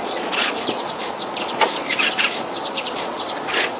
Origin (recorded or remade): remade